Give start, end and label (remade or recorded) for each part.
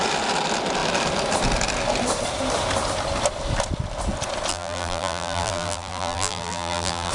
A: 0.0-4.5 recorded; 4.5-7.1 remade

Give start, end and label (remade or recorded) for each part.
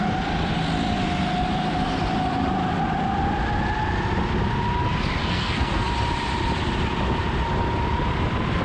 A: 0.0-5.2 recorded; 5.2-5.9 remade; 5.9-8.6 recorded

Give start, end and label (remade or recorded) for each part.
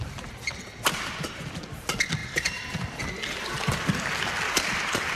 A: 0.0-5.1 recorded